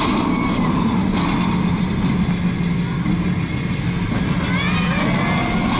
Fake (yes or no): no